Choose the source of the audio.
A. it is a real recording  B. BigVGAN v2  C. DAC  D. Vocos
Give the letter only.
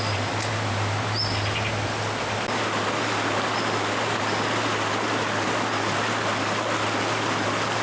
A